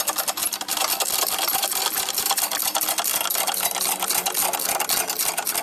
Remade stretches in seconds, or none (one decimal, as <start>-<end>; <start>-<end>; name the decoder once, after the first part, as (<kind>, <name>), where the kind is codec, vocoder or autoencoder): 0.4-2.4 (vocoder, BigVGAN v2)